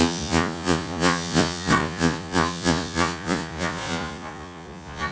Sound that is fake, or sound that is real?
fake